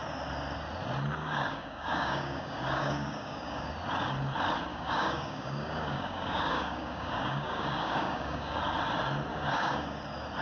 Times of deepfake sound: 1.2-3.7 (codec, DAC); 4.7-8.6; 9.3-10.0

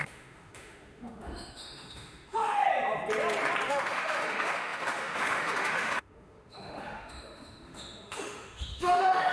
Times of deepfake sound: 0.0-2.7 (autoencoder, DAC-VAE); 3.7-9.3

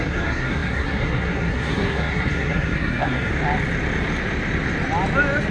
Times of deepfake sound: 0.0-3.3 (codec, SNAC)

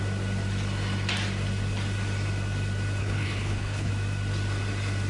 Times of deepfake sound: 3.0-3.9 (codec, HILCodec)

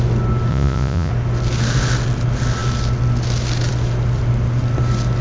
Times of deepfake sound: 0.5-1.1 (vocoder, Vocos)

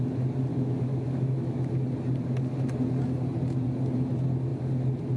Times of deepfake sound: 0.5-1.7 (autoencoder, DAC-VAE)

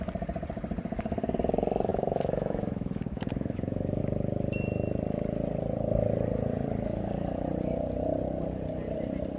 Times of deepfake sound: 1.9-4.0 (autoencoder, DAC-VAE)

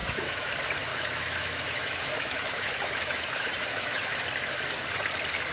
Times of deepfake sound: 0.0-0.5 (autoencoder, DAC-VAE); 0.9-4.2